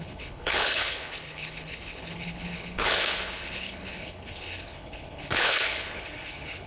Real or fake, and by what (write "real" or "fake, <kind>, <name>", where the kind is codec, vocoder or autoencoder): fake, codec, HILCodec